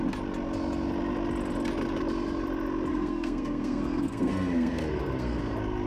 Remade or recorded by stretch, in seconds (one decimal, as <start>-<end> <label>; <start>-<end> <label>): 0.0-2.9 recorded; 2.9-5.4 remade; 5.4-5.9 recorded